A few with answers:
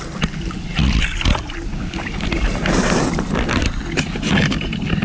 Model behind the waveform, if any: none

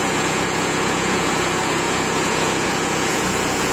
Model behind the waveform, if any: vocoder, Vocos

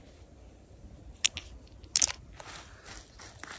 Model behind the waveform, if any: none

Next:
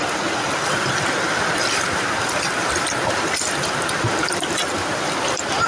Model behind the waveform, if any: vocoder, BigVGAN v2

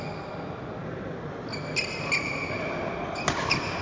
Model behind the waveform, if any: none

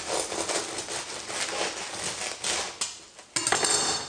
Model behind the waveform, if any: none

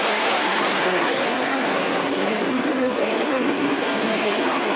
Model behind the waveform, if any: codec, SNAC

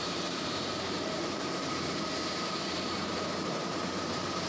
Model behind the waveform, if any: vocoder, BigVGAN v2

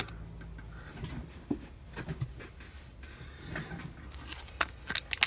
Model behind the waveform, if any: none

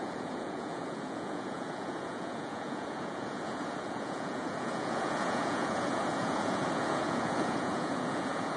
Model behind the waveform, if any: vocoder, Vocos